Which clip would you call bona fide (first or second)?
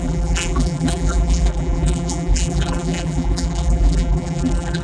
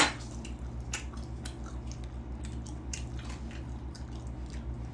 second